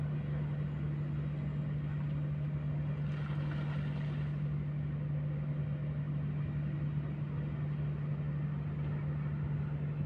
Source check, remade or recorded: recorded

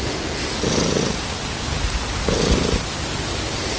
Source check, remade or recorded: recorded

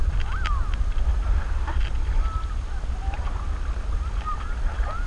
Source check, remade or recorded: recorded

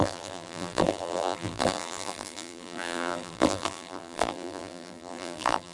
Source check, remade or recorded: remade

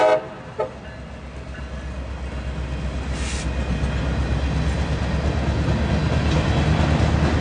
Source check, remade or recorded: recorded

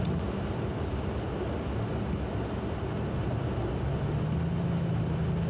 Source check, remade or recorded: recorded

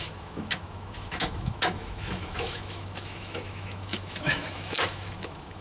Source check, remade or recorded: remade